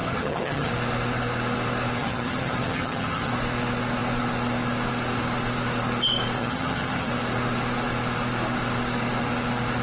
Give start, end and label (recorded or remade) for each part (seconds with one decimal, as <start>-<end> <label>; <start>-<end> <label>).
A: 0.0-0.7 remade; 0.7-2.0 recorded; 2.0-3.3 remade; 3.3-6.4 recorded; 6.4-7.1 remade; 7.1-9.8 recorded